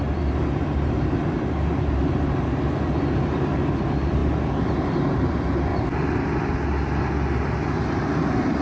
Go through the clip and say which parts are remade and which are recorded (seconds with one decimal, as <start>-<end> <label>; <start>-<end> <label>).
0.0-4.2 remade; 4.2-4.8 recorded; 4.8-5.7 remade; 5.7-7.8 recorded; 7.8-8.6 remade